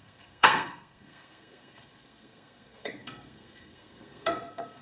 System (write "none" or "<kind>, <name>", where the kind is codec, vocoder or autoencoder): codec, SNAC